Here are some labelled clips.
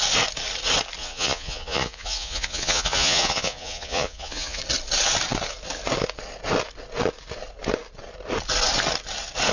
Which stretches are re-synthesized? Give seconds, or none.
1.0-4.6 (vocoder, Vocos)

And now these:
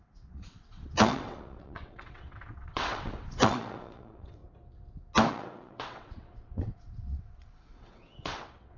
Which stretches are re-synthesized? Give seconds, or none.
0.0-4.4 (vocoder, WaveNeXt); 5.3-8.8

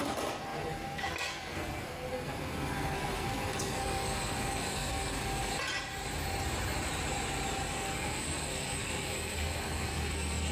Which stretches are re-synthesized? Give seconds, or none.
0.0-5.5 (codec, SNAC); 7.7-10.5

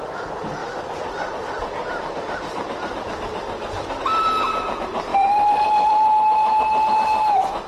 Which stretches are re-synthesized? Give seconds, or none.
0.6-4.0 (vocoder, BigVGAN v2); 5.1-6.1

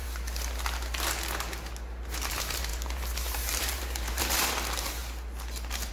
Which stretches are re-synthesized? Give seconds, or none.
2.3-5.0 (vocoder, BigVGAN v2)

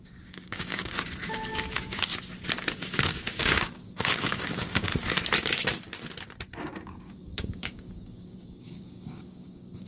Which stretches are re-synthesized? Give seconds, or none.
0.0-2.1 (codec, DAC); 2.8-4.9; 6.5-9.9

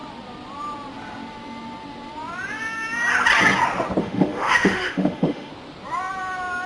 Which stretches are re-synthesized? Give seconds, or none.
4.0-5.5 (autoencoder, DAC-VAE)

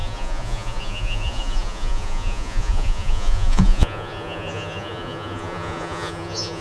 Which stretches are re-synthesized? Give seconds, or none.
0.0-6.6 (vocoder, Vocos)